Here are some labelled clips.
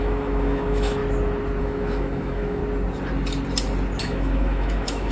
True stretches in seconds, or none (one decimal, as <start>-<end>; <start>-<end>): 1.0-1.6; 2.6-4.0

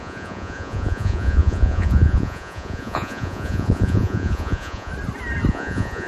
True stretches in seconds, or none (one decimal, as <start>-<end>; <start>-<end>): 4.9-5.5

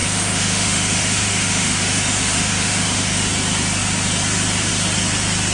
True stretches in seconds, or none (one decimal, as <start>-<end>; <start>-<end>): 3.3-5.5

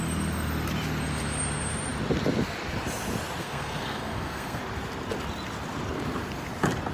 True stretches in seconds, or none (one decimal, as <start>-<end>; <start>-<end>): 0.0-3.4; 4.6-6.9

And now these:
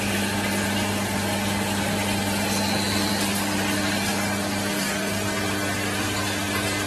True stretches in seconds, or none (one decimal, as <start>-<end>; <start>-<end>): 0.0-6.9

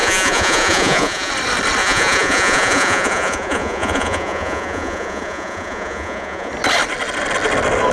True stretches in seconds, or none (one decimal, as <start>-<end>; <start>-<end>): 1.3-1.8; 6.5-7.9

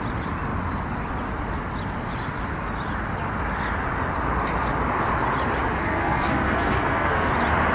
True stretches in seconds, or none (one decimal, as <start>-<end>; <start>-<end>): 0.0-5.8; 7.3-7.7

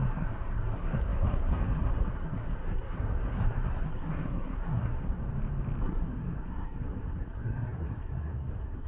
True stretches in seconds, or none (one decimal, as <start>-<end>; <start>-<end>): 5.2-5.8